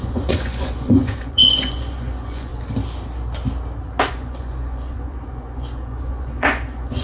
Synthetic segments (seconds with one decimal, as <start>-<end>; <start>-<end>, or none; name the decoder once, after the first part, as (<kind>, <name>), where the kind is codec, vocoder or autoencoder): 0.0-2.5 (vocoder, Vocos); 4.1-7.0